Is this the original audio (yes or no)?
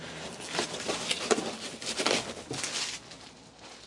yes